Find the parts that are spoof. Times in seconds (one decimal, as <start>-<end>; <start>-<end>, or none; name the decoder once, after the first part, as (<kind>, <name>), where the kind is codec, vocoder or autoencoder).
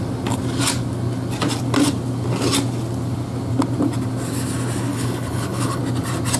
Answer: 4.9-5.8 (codec, HILCodec)